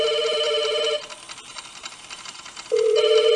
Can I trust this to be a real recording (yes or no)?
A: no